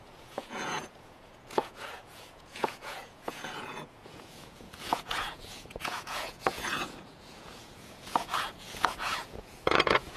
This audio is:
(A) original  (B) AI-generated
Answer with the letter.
B